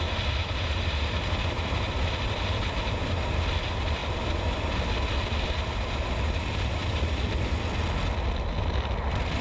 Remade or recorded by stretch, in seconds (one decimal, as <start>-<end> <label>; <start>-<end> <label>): 0.0-9.4 recorded